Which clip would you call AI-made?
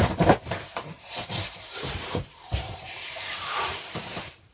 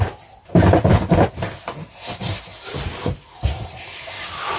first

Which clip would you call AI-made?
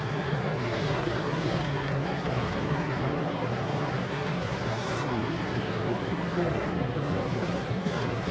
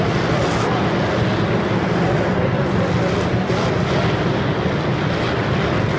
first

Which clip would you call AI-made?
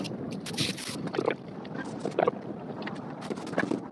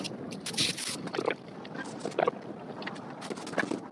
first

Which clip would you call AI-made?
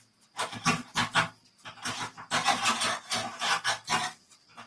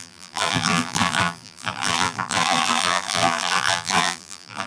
second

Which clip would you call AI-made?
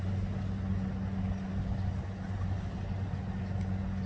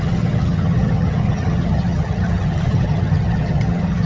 second